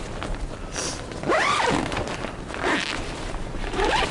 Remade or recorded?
recorded